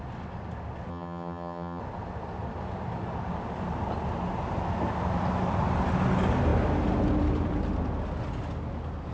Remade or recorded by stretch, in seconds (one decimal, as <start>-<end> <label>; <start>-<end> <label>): 0.0-0.9 recorded; 0.9-1.8 remade; 1.8-9.1 recorded